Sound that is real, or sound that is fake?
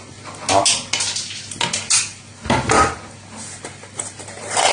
real